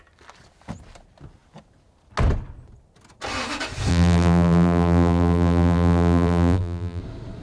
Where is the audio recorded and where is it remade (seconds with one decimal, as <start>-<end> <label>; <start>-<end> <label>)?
0.0-3.9 recorded; 3.9-7.0 remade; 7.0-7.4 recorded